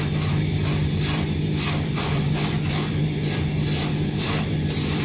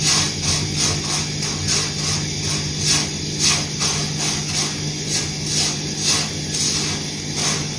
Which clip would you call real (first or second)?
second